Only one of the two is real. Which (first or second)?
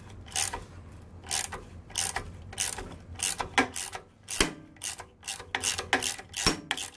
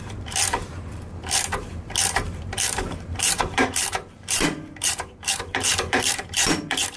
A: first